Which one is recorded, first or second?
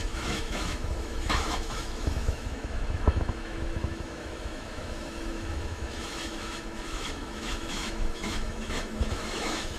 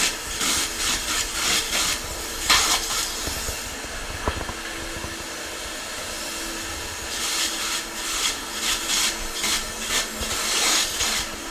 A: second